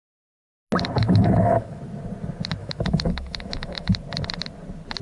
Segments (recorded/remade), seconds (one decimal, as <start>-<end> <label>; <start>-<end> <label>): 0.0-1.0 recorded; 1.0-1.8 remade; 1.8-2.6 recorded; 2.6-3.9 remade; 3.9-5.0 recorded